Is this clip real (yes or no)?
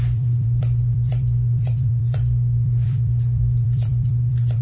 no